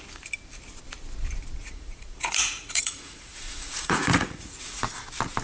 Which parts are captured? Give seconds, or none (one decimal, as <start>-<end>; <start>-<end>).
0.0-1.6; 4.8-5.4